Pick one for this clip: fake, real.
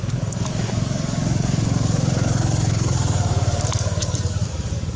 fake